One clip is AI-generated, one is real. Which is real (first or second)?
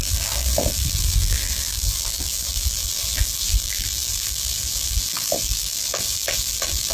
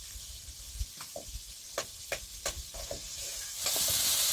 second